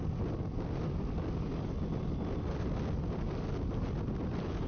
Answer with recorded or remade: recorded